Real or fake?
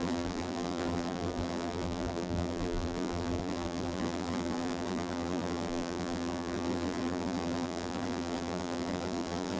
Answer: fake